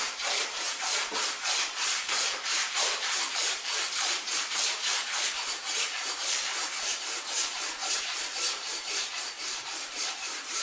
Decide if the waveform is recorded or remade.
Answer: remade